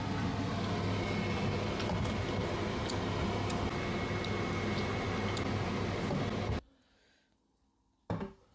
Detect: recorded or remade recorded